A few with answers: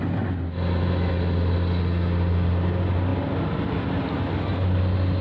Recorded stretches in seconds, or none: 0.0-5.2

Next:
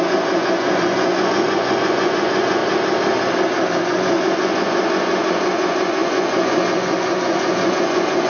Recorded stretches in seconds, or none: 2.6-3.8